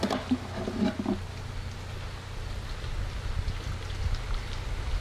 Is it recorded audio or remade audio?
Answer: recorded